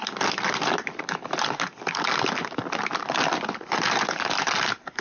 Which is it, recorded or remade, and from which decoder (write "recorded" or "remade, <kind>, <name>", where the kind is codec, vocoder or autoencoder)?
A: recorded